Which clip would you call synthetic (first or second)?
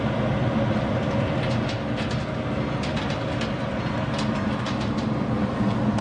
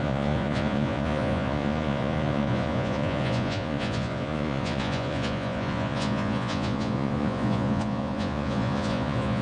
second